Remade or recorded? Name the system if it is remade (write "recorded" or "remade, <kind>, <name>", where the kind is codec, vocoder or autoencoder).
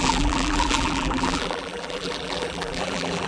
remade, vocoder, BigVGAN v2